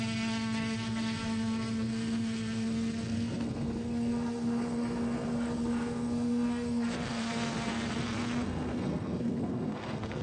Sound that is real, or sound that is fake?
fake